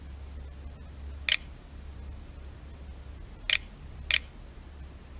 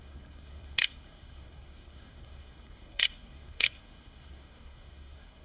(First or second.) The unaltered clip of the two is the first